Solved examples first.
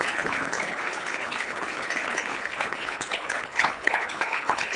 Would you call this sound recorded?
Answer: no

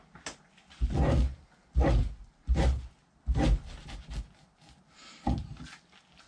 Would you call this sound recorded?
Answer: yes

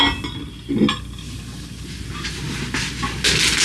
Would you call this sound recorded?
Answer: yes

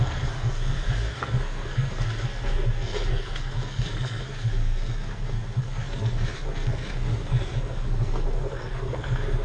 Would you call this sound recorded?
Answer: no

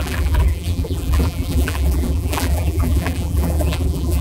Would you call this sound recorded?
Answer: no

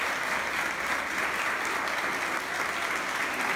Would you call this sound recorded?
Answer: yes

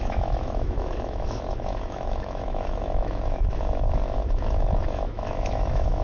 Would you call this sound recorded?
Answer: no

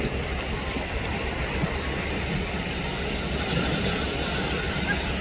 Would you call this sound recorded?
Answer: yes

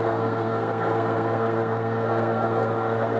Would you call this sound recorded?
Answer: no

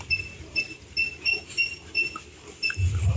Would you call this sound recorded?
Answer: yes